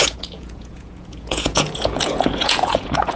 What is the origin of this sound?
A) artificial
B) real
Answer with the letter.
A